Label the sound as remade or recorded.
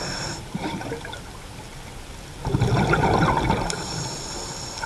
recorded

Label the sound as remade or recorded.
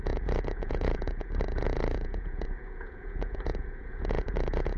remade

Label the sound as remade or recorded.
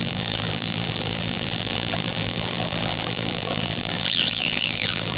remade